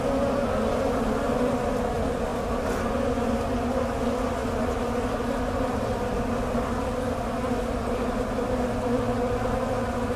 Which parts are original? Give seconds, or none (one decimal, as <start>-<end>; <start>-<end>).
0.0-10.2